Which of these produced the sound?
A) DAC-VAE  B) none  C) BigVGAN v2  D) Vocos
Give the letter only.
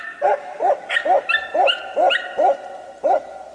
B